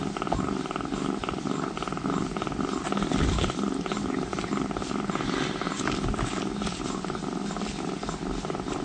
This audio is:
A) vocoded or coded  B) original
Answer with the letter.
B